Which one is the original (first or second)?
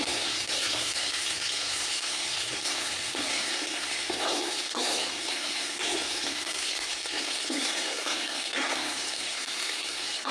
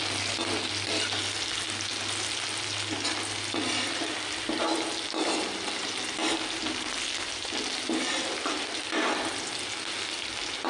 second